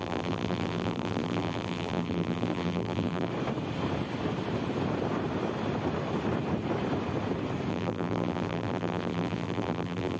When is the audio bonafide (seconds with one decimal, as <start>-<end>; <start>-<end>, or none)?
3.3-7.7